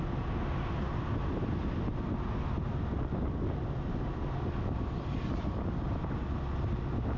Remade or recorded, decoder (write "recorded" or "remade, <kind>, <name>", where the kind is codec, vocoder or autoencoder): recorded